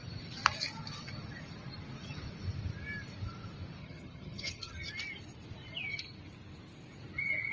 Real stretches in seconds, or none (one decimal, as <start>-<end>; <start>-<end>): 0.0-3.8; 4.9-7.5

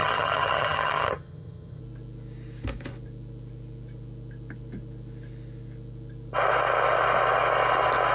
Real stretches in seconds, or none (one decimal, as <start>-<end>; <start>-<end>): 1.8-8.1

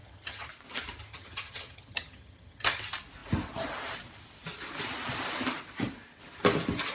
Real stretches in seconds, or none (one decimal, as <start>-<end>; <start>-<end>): 0.5-1.1; 2.8-6.9

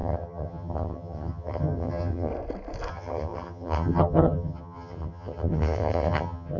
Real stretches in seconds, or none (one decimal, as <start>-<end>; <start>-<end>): 2.3-2.9

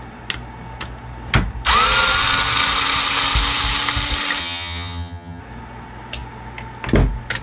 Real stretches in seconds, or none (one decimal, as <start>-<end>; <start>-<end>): 0.0-4.4; 5.4-7.4

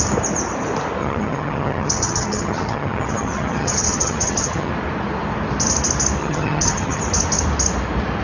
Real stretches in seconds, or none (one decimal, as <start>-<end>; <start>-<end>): 0.0-1.0; 4.7-6.2; 7.0-8.2

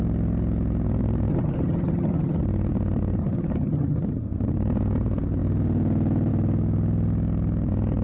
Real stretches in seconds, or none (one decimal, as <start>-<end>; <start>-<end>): 0.0-1.3; 2.4-3.2; 4.2-8.0